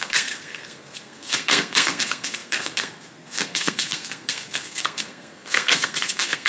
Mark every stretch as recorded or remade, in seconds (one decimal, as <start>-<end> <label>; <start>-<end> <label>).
0.0-6.5 remade